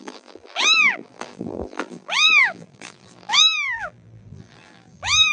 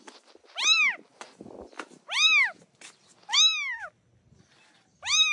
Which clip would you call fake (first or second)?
first